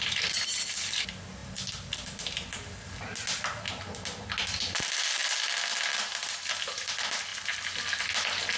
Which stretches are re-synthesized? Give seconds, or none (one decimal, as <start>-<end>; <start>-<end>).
5.2-6.5; 7.3-8.0